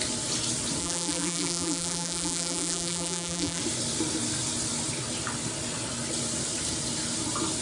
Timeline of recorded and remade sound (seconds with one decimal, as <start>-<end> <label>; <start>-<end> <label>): 0.0-0.8 recorded; 0.8-3.6 remade; 3.6-7.6 recorded